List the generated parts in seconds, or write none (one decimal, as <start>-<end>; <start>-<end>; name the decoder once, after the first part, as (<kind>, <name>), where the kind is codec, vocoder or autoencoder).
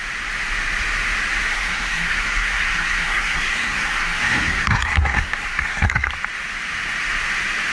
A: 1.5-6.1 (codec, SNAC)